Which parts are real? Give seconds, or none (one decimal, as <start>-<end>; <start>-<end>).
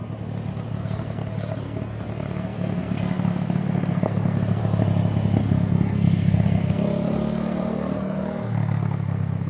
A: 0.0-0.7; 4.6-5.4